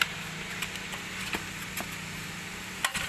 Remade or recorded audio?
recorded